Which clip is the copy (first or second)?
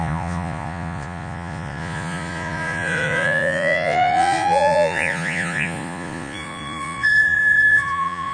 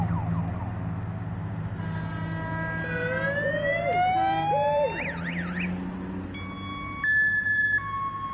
first